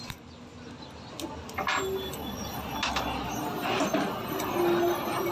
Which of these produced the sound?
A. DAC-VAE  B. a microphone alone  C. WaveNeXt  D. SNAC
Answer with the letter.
B